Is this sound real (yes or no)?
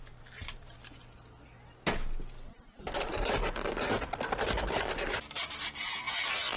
yes